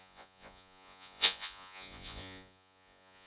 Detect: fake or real fake